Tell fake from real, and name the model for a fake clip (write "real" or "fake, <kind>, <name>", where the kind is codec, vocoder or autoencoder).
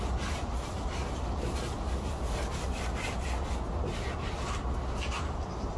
real